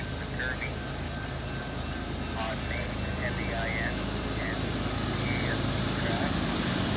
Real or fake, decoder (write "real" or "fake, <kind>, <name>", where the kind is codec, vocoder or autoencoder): real